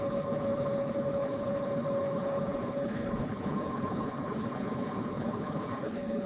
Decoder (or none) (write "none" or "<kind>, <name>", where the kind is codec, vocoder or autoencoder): codec, HILCodec